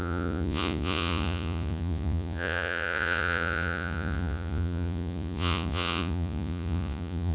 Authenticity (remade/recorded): remade